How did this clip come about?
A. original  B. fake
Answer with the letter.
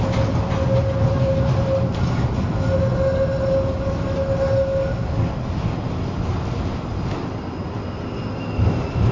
A